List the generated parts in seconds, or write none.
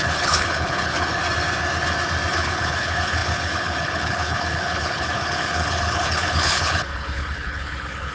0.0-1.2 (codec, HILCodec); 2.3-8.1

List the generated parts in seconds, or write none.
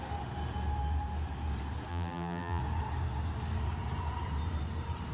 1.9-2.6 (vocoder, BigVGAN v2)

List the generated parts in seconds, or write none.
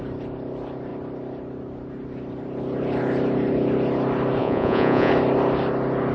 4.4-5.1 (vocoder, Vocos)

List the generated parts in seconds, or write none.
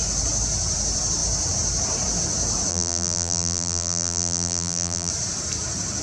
2.7-5.1 (vocoder, BigVGAN v2)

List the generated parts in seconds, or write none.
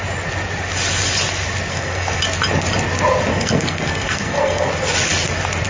1.7-2.2 (codec, SNAC); 3.3-4.7